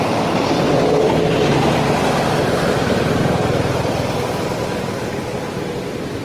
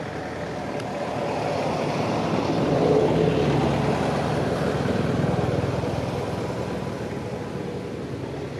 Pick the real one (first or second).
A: second